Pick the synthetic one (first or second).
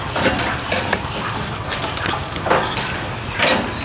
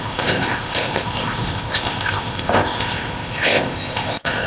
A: second